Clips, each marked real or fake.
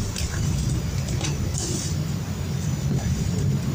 real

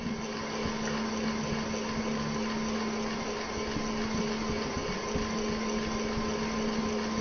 real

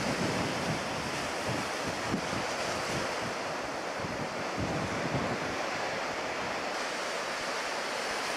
real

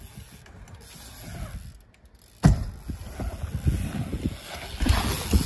real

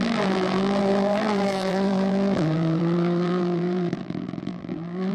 fake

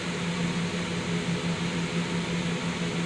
real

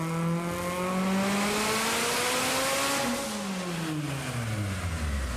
real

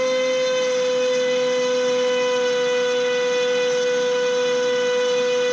real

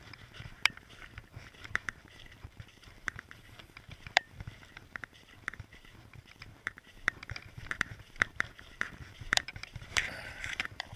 fake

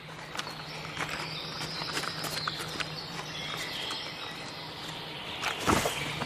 real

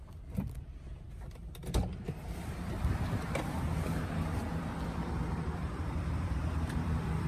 fake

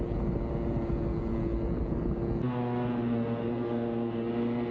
real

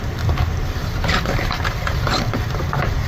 fake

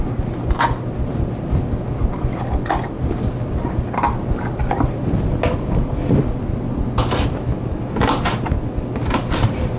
real